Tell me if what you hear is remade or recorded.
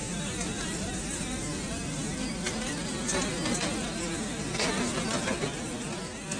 recorded